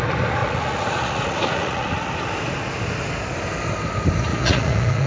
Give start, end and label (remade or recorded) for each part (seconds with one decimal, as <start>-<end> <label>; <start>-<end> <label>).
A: 0.0-0.4 recorded; 0.4-2.1 remade; 2.1-4.3 recorded; 4.3-5.1 remade